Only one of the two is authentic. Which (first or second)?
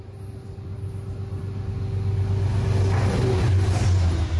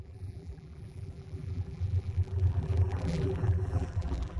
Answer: first